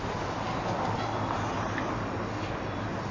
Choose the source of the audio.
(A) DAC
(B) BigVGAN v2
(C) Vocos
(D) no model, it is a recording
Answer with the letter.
D